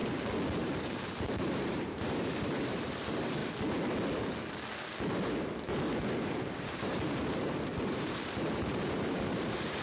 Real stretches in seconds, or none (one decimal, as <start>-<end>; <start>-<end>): 0.0-0.6; 3.4-6.0